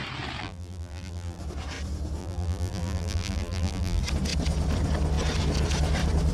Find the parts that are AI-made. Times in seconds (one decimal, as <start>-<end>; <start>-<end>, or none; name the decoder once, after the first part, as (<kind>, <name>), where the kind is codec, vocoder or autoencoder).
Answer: 0.4-1.4 (vocoder, BigVGAN v2); 2.2-4.0